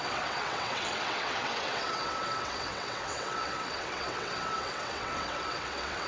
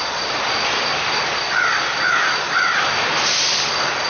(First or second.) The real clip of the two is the second